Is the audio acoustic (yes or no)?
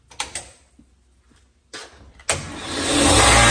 yes